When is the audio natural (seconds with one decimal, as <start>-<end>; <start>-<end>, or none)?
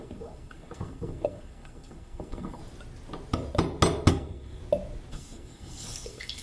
2.6-4.1; 4.6-5.1